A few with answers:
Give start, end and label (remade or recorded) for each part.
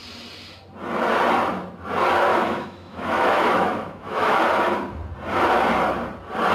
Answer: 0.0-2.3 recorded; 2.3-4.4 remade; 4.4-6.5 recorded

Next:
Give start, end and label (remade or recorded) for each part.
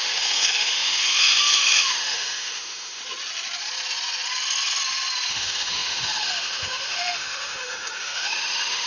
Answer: 0.0-3.0 remade; 3.0-5.3 recorded; 5.3-8.9 remade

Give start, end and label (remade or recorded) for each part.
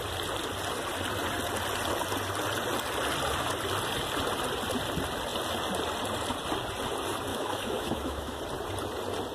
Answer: 0.0-7.3 recorded; 7.3-8.4 remade; 8.4-9.3 recorded